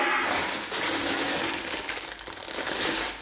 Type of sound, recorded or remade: recorded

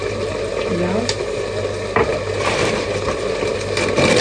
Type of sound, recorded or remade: recorded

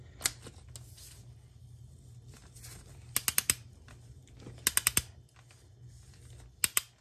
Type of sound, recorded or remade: recorded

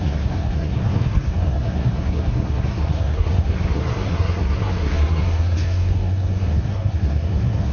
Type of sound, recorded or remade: remade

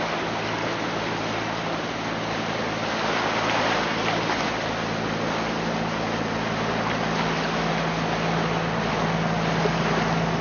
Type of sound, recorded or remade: recorded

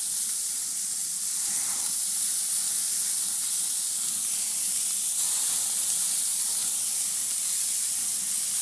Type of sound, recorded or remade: recorded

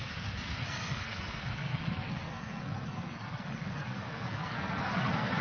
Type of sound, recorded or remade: remade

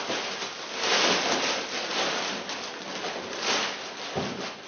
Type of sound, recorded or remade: recorded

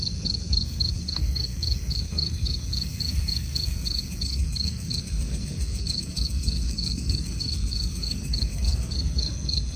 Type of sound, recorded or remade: remade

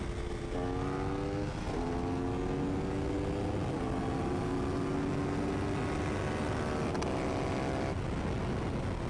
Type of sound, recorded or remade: recorded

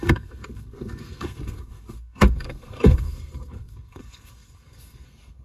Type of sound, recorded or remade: remade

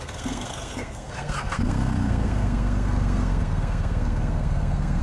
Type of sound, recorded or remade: remade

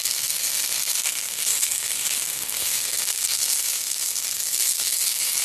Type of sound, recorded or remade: remade